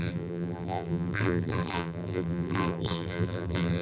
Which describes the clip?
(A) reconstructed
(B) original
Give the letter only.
A